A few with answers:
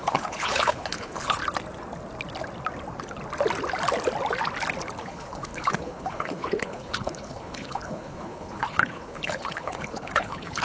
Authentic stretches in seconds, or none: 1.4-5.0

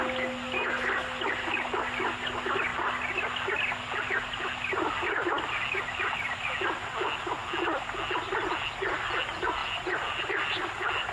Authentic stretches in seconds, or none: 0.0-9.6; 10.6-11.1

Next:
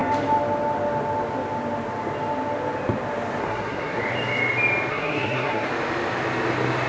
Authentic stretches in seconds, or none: 0.0-3.4; 4.0-4.9; 5.7-6.9

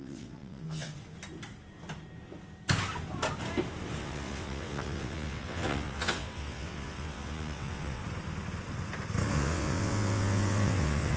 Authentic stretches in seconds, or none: 0.9-4.0; 8.0-9.3

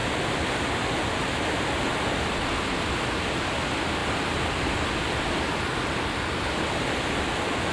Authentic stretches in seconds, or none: 0.0-7.7

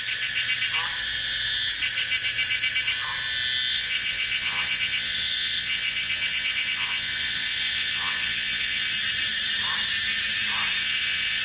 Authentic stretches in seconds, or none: 0.0-3.7; 8.9-10.8

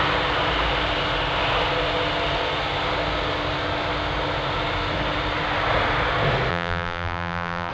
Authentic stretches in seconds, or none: 0.0-6.5